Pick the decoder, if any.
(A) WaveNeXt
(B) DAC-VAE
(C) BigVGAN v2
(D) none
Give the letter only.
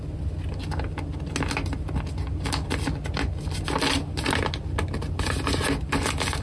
D